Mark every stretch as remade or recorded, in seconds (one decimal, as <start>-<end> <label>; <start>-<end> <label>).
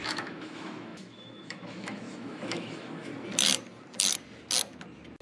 0.0-3.1 remade; 3.1-5.2 recorded